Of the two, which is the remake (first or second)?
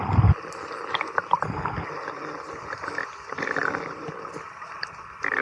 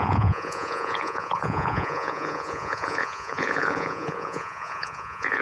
second